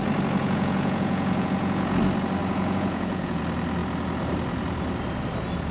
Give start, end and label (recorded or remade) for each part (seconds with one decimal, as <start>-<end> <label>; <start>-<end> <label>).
0.0-0.4 recorded; 0.4-2.0 remade; 2.0-2.4 recorded; 2.4-3.4 remade; 3.4-5.7 recorded